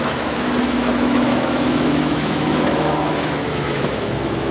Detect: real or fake fake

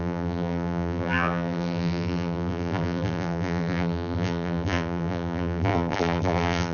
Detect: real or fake fake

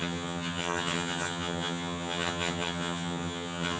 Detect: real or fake fake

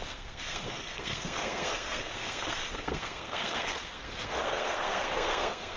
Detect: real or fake fake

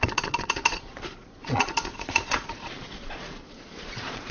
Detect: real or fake fake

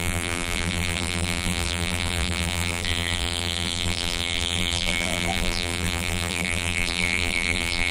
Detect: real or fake fake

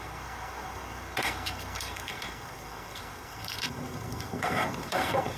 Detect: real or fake fake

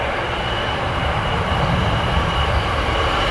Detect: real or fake real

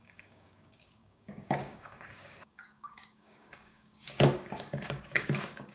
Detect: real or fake fake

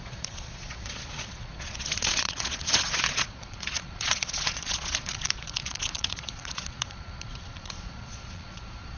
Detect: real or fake fake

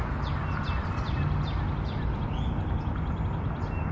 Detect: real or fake real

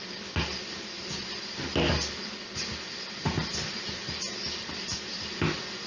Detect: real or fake real